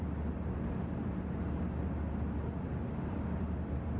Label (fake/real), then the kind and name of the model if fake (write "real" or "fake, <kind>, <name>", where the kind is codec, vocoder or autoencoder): real